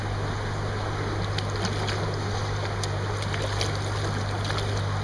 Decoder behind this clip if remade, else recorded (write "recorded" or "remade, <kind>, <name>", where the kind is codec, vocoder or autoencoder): recorded